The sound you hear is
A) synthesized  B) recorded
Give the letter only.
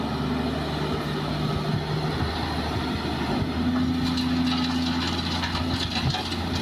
B